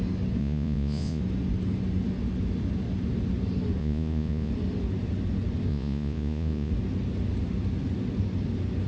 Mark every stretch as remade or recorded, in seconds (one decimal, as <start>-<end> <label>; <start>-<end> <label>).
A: 0.0-0.4 recorded; 0.4-1.2 remade; 1.2-3.8 recorded; 3.8-4.5 remade; 4.5-5.7 recorded; 5.7-6.7 remade; 6.7-8.9 recorded